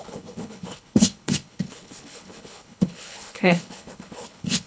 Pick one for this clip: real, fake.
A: fake